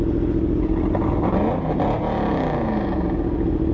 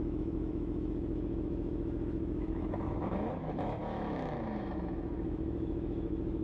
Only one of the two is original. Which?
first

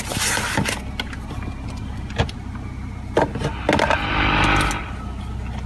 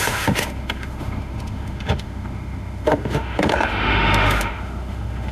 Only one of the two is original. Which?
first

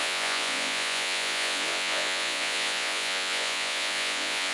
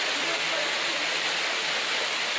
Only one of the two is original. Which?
second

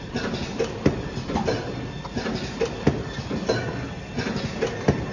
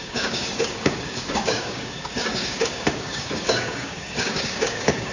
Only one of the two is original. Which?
first